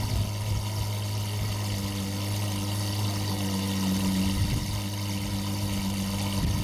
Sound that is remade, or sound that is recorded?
recorded